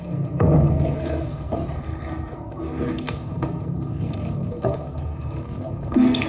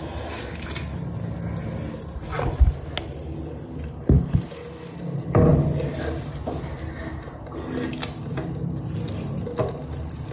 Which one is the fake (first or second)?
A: first